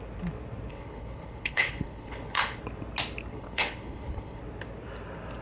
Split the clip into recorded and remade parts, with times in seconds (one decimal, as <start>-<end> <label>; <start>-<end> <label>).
0.0-0.7 recorded; 0.7-2.6 remade; 2.6-3.3 recorded; 3.3-4.4 remade; 4.4-5.4 recorded

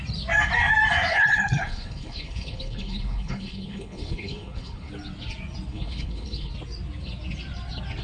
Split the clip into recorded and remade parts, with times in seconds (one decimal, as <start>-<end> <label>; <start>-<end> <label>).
0.0-1.1 recorded; 1.1-4.9 remade; 4.9-5.7 recorded; 5.7-6.5 remade; 6.5-8.0 recorded

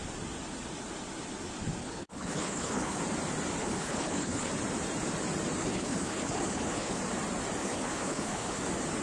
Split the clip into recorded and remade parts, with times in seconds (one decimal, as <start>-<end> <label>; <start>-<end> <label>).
0.0-1.8 recorded; 1.8-3.0 remade; 3.0-3.6 recorded; 3.6-4.5 remade; 4.5-5.6 recorded; 5.6-7.0 remade; 7.0-7.6 recorded; 7.6-8.6 remade; 8.6-9.0 recorded

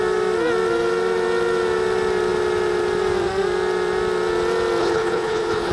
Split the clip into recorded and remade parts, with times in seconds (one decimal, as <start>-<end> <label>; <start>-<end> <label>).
0.0-4.8 recorded; 4.8-5.7 remade